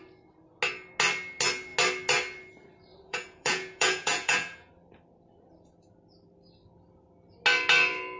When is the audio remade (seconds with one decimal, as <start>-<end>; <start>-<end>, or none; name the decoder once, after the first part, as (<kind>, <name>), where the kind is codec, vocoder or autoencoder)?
2.9-4.7 (vocoder, Vocos)